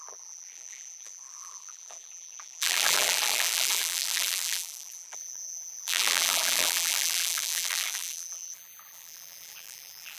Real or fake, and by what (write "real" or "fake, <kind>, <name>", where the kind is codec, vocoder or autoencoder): fake, vocoder, BigVGAN v2